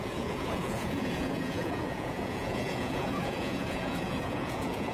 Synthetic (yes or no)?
yes